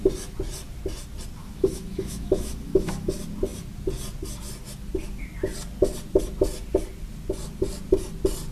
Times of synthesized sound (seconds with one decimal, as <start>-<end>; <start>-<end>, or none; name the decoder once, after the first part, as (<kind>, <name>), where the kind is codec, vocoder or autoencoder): 1.4-3.1 (autoencoder, DAC-VAE)